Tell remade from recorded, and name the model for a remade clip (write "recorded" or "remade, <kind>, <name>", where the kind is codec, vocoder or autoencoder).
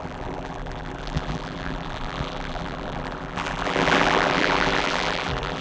remade, vocoder, BigVGAN v2